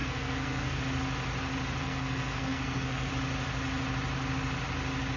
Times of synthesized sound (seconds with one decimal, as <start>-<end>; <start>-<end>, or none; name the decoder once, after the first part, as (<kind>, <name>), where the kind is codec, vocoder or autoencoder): 0.0-0.8 (codec, SNAC); 1.8-3.1